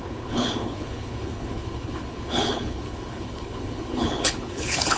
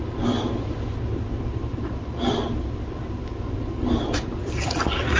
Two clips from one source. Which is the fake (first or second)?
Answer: first